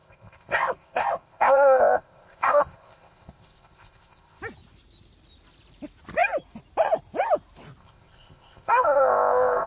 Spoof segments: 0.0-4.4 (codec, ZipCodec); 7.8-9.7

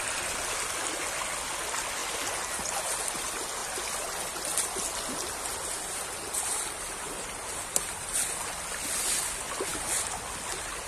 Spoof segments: none